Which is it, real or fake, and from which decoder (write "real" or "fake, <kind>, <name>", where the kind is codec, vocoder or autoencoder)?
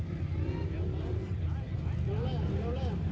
real